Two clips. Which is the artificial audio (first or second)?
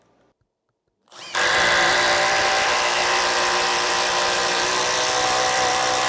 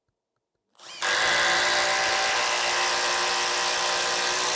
first